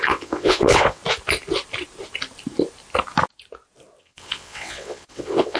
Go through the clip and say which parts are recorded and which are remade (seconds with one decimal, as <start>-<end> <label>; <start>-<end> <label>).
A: 0.0-1.0 remade; 1.0-4.0 recorded; 4.0-5.6 remade